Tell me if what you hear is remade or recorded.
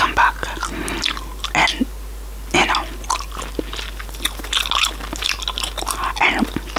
recorded